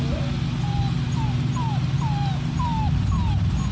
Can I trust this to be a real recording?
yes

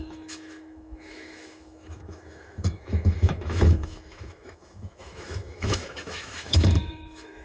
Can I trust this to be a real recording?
no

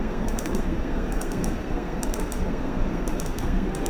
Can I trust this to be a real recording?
no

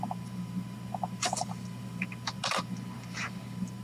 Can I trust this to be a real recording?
yes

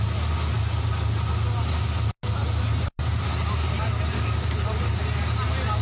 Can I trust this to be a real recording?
yes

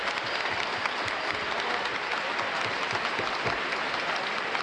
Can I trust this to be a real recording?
yes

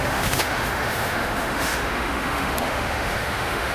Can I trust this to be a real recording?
no